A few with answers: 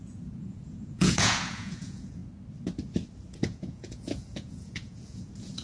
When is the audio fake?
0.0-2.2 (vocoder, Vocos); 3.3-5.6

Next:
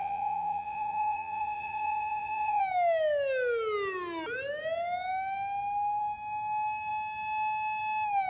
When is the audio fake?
0.0-2.6 (vocoder, Vocos)

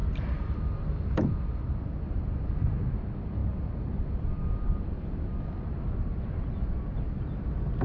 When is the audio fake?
none